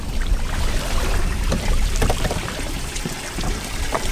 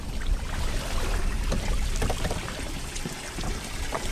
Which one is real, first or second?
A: second